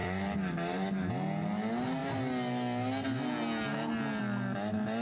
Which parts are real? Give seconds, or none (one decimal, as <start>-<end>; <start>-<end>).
1.1-5.0

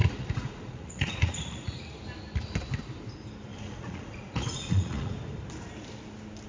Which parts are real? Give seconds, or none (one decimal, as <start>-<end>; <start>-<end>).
1.9-3.5; 5.1-6.5

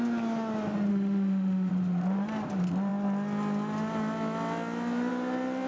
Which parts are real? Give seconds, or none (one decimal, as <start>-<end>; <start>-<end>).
0.0-0.9; 1.7-5.7

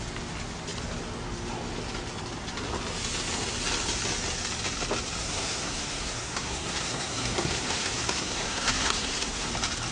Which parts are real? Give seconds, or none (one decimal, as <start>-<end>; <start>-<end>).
0.0-5.2; 9.5-9.9

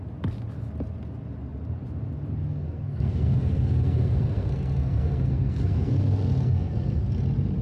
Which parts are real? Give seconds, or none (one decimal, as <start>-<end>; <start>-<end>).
0.0-2.4; 7.0-7.6

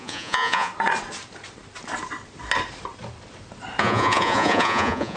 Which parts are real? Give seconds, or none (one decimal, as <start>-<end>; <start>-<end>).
0.7-3.8

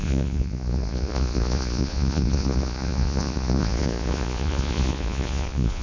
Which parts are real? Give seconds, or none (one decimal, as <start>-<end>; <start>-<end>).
none